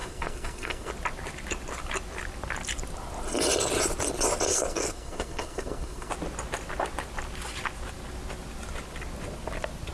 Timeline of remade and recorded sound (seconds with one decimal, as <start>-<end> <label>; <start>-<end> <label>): 0.0-0.9 remade; 0.9-4.5 recorded; 4.5-6.1 remade; 6.1-9.9 recorded